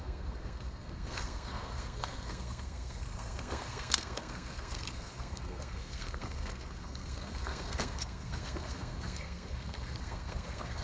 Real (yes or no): no